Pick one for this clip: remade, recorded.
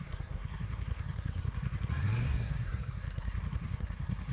remade